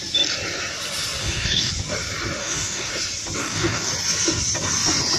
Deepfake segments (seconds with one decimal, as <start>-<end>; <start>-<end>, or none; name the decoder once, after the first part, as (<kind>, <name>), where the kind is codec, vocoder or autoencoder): 1.2-1.7 (codec, DAC); 2.4-2.9; 3.4-3.9